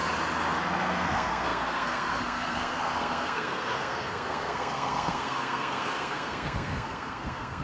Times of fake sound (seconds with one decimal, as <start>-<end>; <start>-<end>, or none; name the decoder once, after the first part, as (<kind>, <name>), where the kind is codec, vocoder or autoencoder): 0.6-7.6 (codec, SNAC)